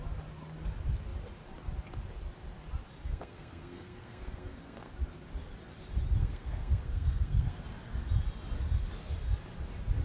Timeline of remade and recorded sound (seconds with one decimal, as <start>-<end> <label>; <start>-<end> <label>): 0.0-3.1 recorded; 3.1-4.9 remade; 4.9-6.2 recorded; 6.2-7.6 remade; 7.6-10.0 recorded